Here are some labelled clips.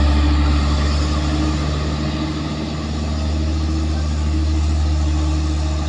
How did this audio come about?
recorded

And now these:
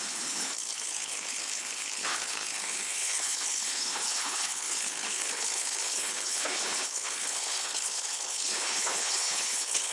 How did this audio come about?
remade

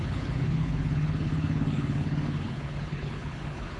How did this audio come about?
remade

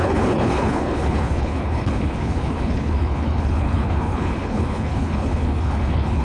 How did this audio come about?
remade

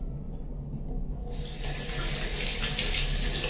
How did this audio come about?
recorded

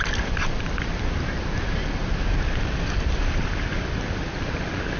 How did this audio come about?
recorded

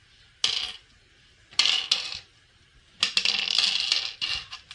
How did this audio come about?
recorded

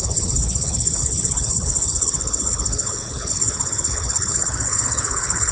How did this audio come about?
remade